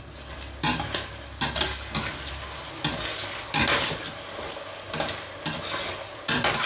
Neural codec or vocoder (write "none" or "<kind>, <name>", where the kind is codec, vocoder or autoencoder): none